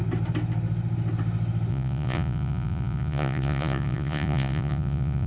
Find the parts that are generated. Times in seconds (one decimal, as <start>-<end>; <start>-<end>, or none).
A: 1.7-5.3